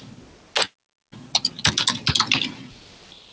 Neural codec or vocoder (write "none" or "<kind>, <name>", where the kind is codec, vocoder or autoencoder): none